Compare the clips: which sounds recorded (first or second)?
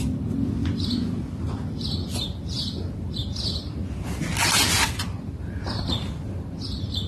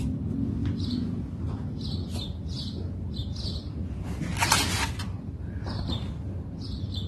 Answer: second